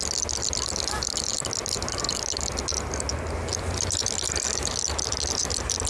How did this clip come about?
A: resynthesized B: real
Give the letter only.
B